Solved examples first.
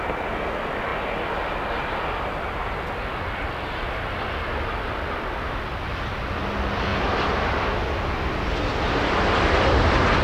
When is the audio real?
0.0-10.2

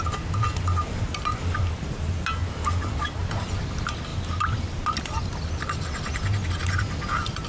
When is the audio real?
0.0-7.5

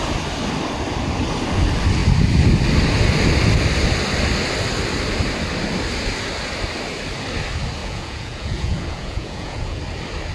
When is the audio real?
0.0-7.8; 9.8-10.3